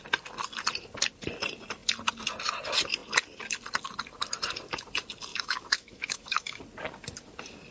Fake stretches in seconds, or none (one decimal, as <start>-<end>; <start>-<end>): 5.3-6.6

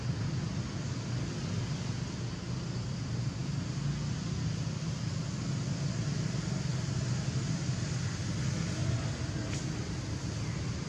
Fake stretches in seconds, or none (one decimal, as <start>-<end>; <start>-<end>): none

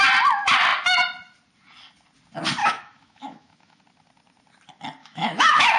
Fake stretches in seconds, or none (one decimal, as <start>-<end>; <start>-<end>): 2.6-3.8; 5.0-5.8

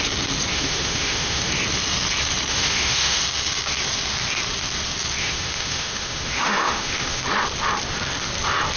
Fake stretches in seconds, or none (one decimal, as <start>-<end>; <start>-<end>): 0.5-1.5; 2.5-3.2; 5.2-7.2

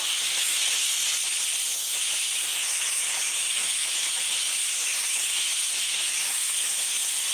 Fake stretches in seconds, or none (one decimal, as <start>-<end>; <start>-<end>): 0.0-1.0; 1.7-7.3

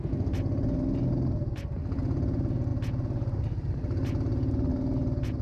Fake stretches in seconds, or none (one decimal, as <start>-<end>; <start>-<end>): none